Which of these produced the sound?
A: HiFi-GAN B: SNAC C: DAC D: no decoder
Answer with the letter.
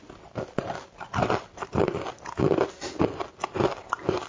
D